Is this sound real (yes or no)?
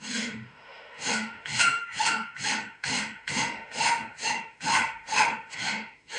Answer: no